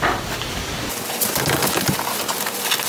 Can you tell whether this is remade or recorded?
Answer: recorded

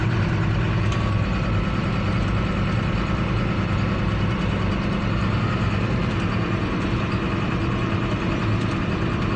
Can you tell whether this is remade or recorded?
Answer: recorded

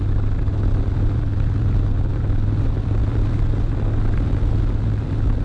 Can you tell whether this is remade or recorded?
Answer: remade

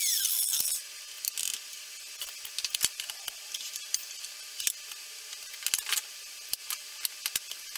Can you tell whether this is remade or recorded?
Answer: recorded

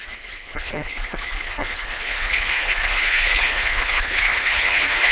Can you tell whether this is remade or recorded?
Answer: remade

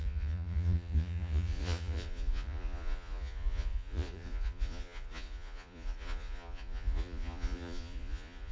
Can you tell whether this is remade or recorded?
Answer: remade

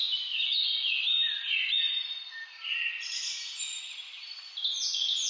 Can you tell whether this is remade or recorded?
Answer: recorded